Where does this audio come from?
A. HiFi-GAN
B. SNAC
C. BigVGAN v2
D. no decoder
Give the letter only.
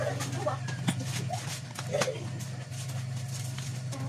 C